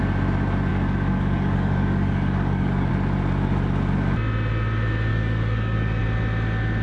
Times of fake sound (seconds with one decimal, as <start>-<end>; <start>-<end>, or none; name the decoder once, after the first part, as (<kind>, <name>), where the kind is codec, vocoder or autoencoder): 0.7-2.9 (codec, DAC); 5.1-6.0

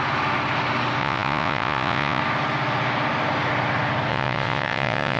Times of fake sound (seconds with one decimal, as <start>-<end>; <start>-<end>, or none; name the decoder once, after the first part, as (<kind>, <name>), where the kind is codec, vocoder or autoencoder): 1.0-2.2 (vocoder, Vocos); 4.1-5.2

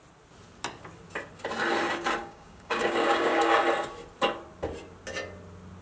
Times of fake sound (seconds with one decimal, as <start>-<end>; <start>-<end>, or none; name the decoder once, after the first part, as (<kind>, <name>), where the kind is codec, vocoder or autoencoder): 2.2-3.6 (codec, DAC)

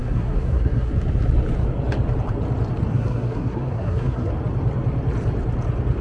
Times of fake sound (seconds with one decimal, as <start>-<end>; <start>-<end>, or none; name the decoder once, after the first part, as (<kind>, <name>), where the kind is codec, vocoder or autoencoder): 0.0-0.9 (codec, SNAC); 2.9-4.3

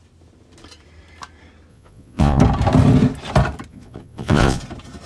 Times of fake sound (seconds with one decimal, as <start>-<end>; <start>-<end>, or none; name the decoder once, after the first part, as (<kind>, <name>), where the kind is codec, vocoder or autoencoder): 1.7-2.4 (vocoder, Vocos); 3.7-4.6

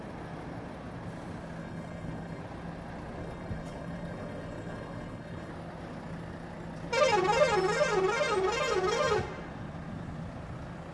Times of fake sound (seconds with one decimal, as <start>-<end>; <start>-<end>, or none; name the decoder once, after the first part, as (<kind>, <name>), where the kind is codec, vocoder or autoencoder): 1.6-2.4 (codec, HILCodec); 3.2-5.5